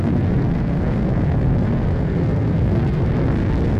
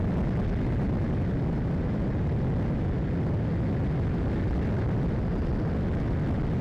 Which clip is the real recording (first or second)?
second